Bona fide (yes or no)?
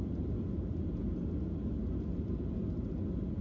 yes